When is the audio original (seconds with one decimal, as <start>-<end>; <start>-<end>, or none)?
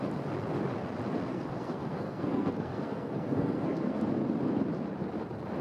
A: 0.0-1.3; 4.0-5.6